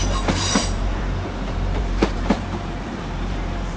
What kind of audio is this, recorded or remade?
remade